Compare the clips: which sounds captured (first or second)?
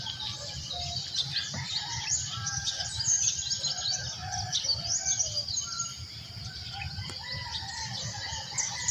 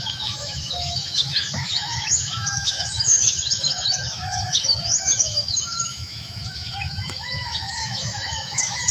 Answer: first